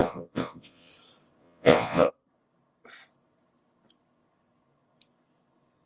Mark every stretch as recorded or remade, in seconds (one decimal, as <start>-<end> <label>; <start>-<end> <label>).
0.0-0.9 remade; 0.9-1.4 recorded; 1.4-2.1 remade; 2.1-5.9 recorded